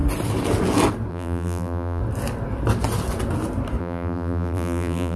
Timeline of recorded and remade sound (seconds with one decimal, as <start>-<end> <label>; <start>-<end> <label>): 0.0-1.1 recorded; 1.1-2.0 remade; 2.0-3.8 recorded; 3.8-5.2 remade

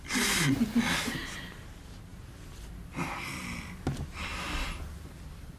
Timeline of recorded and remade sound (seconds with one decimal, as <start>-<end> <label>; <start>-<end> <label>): 0.0-5.6 recorded